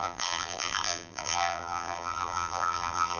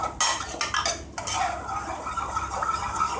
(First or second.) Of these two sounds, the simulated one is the first